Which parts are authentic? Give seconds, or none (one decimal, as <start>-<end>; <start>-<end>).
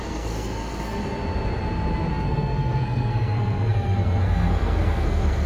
1.0-2.1